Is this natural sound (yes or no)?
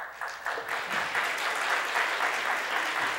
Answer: yes